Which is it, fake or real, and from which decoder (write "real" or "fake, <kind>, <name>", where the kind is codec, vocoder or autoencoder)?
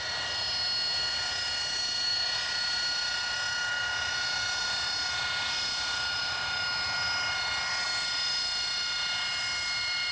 real